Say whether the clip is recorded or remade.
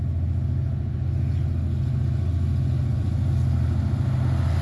recorded